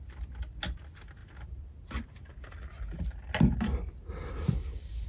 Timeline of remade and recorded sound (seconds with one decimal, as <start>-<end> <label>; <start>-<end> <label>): 0.0-5.1 recorded